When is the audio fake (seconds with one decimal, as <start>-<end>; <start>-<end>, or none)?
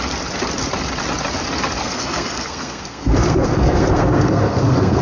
1.8-5.0